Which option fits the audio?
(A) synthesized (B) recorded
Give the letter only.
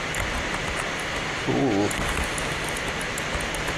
B